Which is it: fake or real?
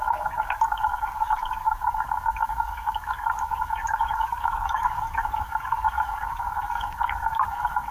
fake